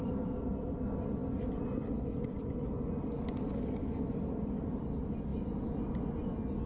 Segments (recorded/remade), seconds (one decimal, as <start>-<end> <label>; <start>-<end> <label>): 0.0-6.7 recorded